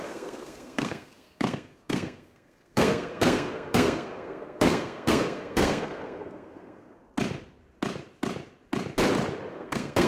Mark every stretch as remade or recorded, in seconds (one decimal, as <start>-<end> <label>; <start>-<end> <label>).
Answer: 0.0-7.0 remade; 7.0-9.5 recorded; 9.5-10.1 remade